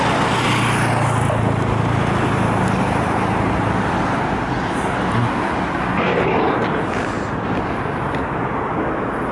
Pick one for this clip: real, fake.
real